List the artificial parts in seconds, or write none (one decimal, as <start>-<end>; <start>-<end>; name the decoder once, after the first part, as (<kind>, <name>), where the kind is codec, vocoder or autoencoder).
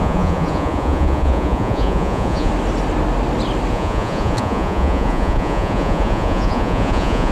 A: 0.0-2.5 (vocoder, Vocos); 3.7-7.3